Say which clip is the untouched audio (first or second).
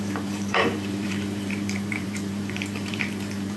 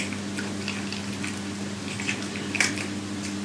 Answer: second